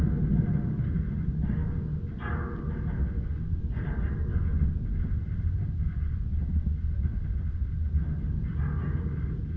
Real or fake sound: real